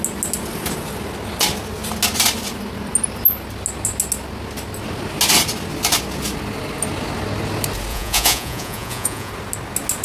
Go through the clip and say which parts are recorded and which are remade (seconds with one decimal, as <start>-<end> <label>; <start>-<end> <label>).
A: 0.0-7.9 recorded; 7.9-9.3 remade; 9.3-10.0 recorded